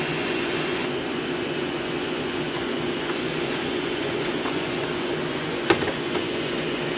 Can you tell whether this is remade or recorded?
remade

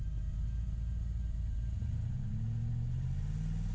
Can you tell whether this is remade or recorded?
recorded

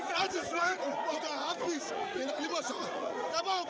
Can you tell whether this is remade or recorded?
remade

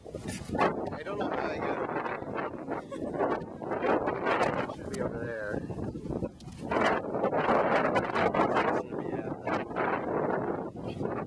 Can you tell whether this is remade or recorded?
recorded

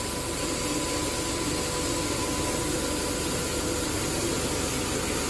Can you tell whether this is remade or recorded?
recorded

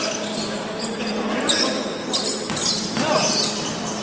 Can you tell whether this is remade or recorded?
recorded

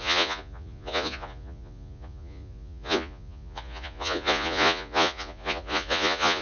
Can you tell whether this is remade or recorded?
remade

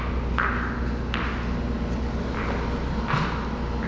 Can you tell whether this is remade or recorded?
recorded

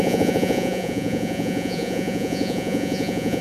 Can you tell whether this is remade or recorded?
remade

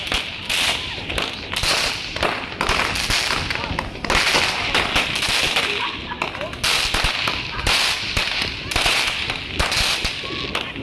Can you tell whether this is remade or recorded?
recorded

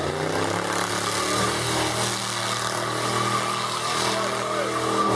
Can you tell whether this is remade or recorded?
recorded